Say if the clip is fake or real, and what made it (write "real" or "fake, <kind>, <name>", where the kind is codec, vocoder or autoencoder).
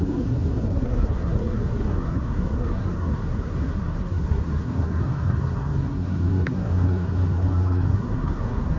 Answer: fake, codec, SNAC